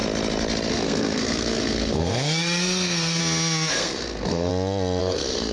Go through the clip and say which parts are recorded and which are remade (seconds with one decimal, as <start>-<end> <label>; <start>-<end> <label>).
0.0-0.7 recorded; 0.7-3.2 remade; 3.2-3.7 recorded; 3.7-4.5 remade; 4.5-5.0 recorded; 5.0-5.5 remade